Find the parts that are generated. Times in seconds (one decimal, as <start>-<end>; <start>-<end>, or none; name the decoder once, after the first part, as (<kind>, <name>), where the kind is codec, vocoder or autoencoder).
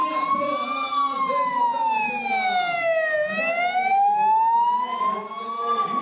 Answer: none